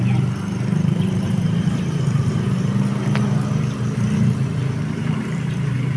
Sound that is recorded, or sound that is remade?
remade